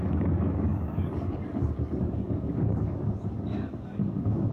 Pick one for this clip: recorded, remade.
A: remade